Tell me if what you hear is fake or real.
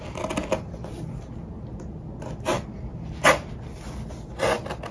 real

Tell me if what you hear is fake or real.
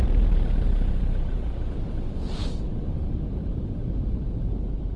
fake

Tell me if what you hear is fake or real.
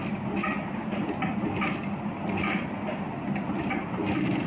real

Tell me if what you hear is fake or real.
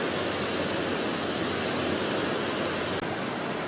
real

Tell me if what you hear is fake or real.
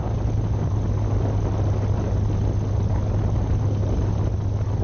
real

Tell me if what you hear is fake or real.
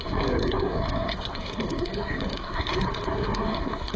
fake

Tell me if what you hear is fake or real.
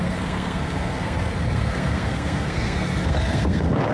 fake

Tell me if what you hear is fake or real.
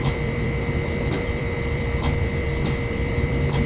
fake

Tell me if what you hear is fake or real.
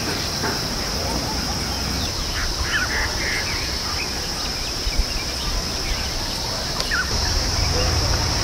real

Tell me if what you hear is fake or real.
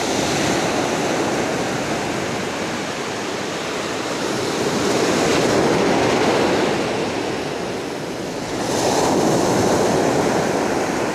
real